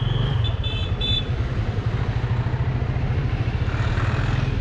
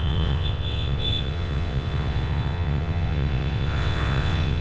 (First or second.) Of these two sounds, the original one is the first